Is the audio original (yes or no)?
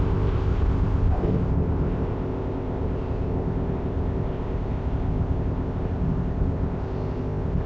no